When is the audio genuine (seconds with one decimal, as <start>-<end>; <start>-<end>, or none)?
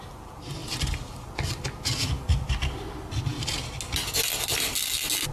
0.0-5.3